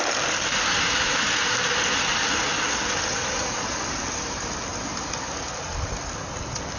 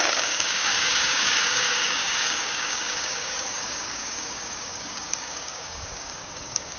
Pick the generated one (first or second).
second